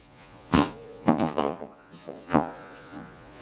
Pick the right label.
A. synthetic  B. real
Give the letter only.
A